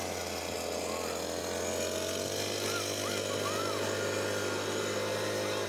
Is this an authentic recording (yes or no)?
yes